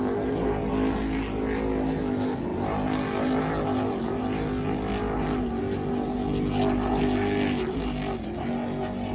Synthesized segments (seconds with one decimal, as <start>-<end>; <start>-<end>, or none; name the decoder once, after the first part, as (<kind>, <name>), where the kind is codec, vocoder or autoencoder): none